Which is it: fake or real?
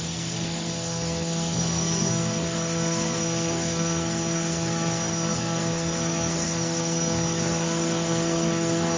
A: fake